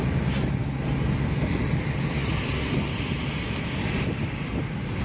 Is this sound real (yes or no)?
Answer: yes